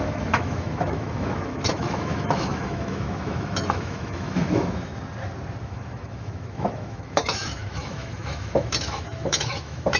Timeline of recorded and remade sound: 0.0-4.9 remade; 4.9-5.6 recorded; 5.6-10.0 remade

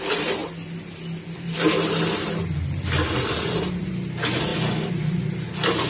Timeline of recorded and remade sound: 0.0-5.9 recorded

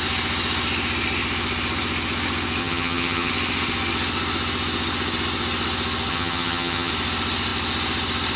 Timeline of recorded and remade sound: 0.0-2.6 recorded; 2.6-3.3 remade; 3.3-6.1 recorded; 6.1-6.9 remade; 6.9-8.4 recorded

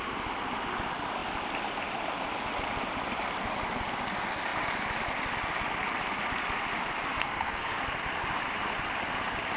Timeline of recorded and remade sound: 0.0-7.2 recorded; 7.2-7.8 remade; 7.8-9.6 recorded

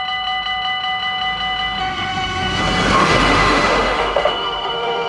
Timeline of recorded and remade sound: 0.0-1.8 recorded; 1.8-2.6 remade; 2.6-3.0 recorded; 3.0-5.1 remade

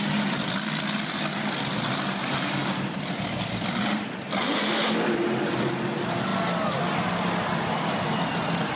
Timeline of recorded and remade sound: 0.0-8.8 recorded